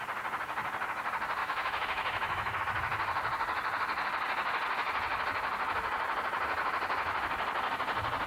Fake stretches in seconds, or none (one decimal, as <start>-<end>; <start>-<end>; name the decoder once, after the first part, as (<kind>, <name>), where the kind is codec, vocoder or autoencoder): 1.4-2.6 (autoencoder, DAC-VAE)